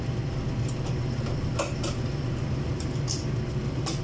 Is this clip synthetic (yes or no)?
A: no